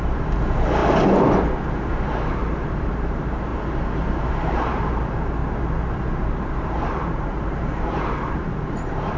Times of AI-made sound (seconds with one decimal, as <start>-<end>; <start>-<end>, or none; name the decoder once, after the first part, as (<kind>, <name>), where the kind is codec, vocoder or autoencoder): 0.0-0.8 (vocoder, BigVGAN v2); 1.7-5.4; 6.6-9.2